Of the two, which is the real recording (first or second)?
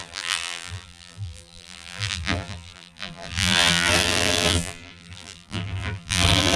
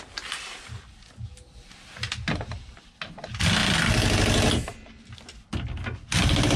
second